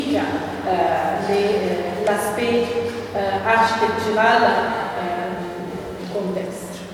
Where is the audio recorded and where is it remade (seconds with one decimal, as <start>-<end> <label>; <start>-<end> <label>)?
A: 0.0-4.7 recorded; 4.7-6.0 remade; 6.0-6.9 recorded